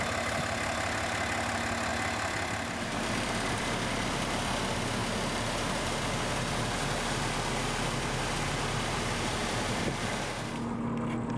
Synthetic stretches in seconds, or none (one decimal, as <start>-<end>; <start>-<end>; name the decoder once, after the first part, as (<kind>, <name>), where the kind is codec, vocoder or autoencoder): 9.4-10.1 (vocoder, BigVGAN v2)

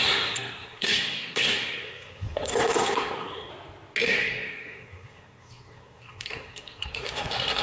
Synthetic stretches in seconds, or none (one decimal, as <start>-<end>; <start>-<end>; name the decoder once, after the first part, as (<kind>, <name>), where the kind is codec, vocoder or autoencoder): 0.0-3.5 (codec, SNAC); 4.0-7.6

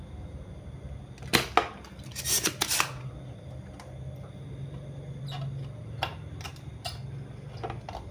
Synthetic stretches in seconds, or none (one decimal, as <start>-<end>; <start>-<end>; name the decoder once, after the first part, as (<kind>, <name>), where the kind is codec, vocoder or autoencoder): none